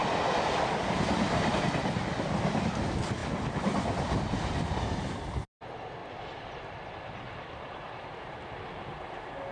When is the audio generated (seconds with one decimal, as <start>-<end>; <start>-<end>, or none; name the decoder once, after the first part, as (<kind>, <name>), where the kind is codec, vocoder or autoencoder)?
0.0-0.9 (vocoder, BigVGAN v2); 3.2-4.1; 6.0-7.7

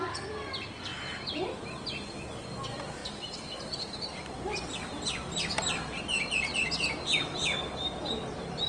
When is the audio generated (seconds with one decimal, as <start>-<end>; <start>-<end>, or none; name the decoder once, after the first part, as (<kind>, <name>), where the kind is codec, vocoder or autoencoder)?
0.0-8.7 (vocoder, BigVGAN v2)

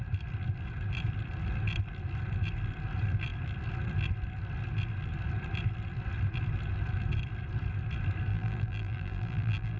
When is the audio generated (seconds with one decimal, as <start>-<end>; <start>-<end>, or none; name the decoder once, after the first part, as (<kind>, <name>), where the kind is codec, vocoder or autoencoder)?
8.3-9.8 (vocoder, BigVGAN v2)

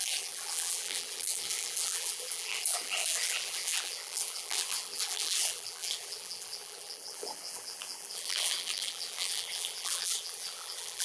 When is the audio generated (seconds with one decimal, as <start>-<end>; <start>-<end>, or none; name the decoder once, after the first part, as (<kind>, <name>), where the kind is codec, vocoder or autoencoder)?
0.0-11.0 (vocoder, BigVGAN v2)